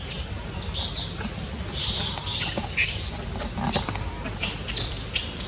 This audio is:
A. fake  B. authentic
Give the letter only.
B